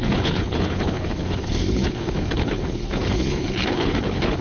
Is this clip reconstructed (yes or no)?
yes